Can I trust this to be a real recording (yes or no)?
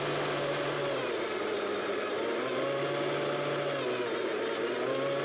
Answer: yes